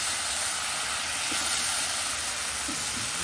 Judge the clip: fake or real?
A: real